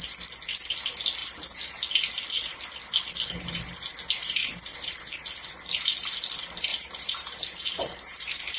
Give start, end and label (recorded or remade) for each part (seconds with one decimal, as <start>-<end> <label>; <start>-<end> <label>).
0.0-4.5 recorded; 4.5-5.3 remade; 5.3-6.7 recorded; 6.7-8.6 remade

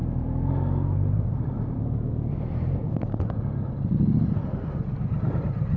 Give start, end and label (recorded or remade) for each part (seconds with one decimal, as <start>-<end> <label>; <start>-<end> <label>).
0.0-5.8 recorded